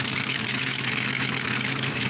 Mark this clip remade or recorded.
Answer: remade